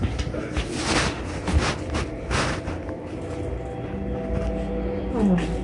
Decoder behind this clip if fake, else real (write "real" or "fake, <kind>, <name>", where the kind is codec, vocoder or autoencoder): real